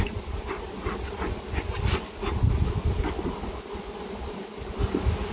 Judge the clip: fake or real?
real